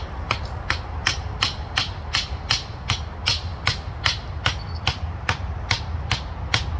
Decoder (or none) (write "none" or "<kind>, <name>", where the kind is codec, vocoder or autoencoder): none